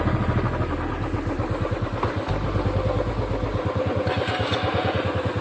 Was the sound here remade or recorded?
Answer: recorded